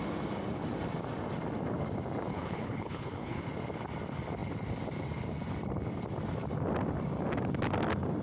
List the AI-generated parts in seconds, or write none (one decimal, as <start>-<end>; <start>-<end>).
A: 2.3-3.4